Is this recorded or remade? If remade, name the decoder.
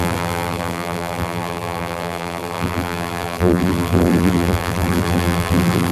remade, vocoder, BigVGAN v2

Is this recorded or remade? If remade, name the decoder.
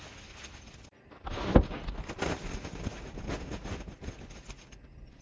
remade, vocoder, BigVGAN v2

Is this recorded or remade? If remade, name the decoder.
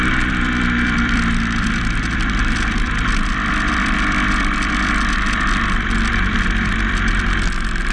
remade, vocoder, BigVGAN v2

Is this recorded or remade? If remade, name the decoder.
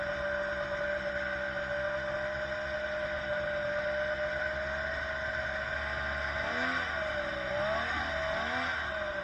recorded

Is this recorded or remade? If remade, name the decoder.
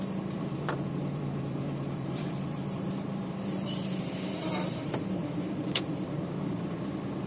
remade, vocoder, BigVGAN v2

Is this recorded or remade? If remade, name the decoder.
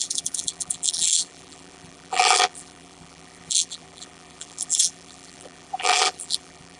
remade, vocoder, BigVGAN v2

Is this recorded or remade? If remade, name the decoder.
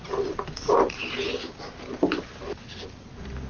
recorded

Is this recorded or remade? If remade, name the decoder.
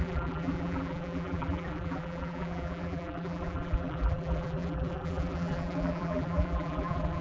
remade, vocoder, BigVGAN v2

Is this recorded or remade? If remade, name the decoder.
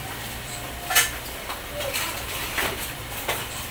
remade, vocoder, BigVGAN v2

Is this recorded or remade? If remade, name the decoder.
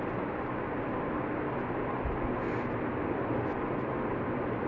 recorded